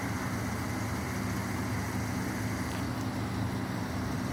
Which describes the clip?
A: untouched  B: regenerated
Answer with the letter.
A